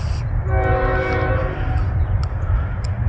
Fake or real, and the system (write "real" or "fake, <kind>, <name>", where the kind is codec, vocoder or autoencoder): real